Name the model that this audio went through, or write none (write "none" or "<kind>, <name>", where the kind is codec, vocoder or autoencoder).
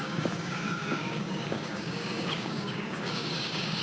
codec, DAC